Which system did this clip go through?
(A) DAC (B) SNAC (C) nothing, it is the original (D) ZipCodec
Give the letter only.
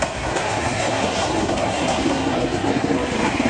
B